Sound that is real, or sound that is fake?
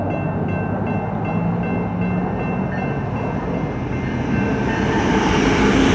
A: real